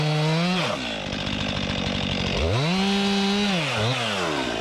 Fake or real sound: real